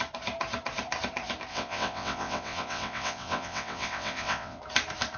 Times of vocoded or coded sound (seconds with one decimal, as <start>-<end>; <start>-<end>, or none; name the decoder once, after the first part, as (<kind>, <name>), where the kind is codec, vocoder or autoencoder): 1.5-4.6 (vocoder, WaveNeXt)

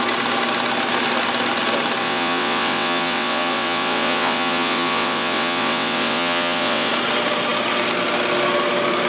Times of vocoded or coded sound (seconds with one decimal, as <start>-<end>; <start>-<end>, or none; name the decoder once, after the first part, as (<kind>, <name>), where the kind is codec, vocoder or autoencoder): 2.0-6.9 (vocoder, WaveNeXt)

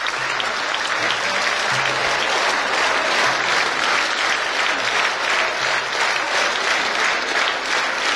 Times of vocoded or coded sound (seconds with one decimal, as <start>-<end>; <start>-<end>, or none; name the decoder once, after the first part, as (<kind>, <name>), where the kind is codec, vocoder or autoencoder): none

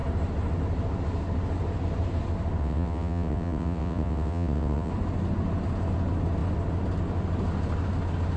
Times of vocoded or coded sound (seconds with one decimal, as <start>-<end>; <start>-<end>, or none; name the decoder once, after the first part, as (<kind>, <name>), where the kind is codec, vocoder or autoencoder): 2.6-4.9 (vocoder, WaveNeXt)

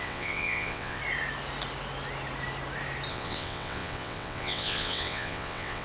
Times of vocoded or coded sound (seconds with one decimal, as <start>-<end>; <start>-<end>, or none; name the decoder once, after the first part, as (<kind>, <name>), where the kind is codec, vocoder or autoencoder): 0.0-1.0 (vocoder, WaveNeXt); 3.1-5.8